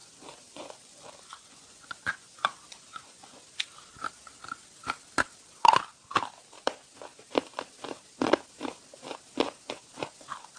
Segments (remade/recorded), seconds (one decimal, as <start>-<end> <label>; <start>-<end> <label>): 0.0-3.4 remade; 3.4-10.6 recorded

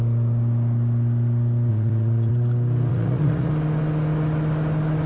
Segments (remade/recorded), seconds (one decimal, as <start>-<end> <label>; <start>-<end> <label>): 0.0-1.7 recorded; 1.7-2.3 remade; 2.3-2.9 recorded; 2.9-3.5 remade; 3.5-5.1 recorded

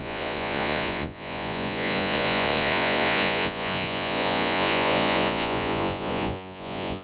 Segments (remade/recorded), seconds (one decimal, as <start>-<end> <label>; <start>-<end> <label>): 0.0-7.0 remade

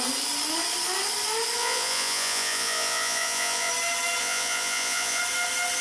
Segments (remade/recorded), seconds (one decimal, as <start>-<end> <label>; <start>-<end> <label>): 0.0-1.6 recorded; 1.6-3.7 remade; 3.7-4.2 recorded; 4.2-5.2 remade; 5.2-5.8 recorded